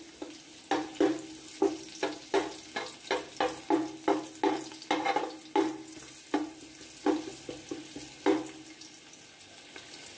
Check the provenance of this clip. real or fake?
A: real